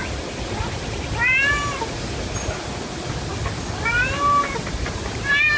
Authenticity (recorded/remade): recorded